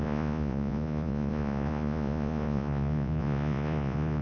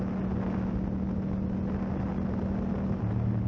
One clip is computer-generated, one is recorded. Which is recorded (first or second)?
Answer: second